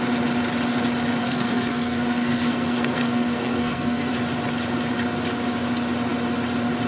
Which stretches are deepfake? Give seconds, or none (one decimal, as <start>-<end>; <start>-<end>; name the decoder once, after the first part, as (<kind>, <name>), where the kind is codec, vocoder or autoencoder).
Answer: 1.2-4.1 (codec, SNAC)

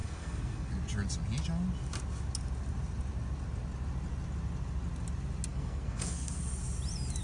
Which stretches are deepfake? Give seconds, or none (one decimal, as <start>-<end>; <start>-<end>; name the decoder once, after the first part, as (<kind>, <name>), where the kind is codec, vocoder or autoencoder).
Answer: 0.0-0.7 (codec, SNAC); 5.5-6.4

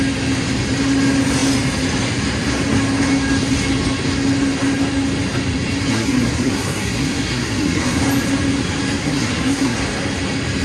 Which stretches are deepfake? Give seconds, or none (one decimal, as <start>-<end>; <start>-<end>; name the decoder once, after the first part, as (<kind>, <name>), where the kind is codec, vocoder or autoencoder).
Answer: 5.9-8.0 (codec, SNAC); 9.0-9.8

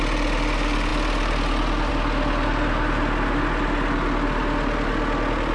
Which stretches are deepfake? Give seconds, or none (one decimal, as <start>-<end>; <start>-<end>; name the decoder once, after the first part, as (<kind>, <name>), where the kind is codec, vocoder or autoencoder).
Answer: none

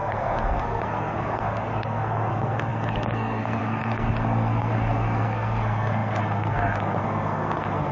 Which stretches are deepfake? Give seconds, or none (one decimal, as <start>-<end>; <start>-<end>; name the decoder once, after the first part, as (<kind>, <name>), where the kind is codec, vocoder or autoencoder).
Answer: 0.0-7.9 (codec, SNAC)

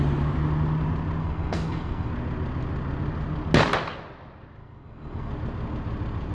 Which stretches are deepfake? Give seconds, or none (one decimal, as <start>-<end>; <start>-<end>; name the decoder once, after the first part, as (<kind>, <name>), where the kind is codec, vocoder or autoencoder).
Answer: 1.2-2.1 (codec, SNAC); 4.6-5.3

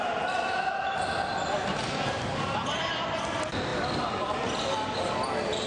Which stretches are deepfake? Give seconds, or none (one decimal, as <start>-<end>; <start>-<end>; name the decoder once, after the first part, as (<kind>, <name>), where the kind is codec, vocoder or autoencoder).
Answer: none

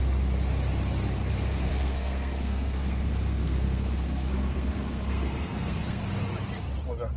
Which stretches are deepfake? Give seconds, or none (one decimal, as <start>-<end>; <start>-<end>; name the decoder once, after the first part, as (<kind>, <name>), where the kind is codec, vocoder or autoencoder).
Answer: 1.7-6.0 (codec, SNAC)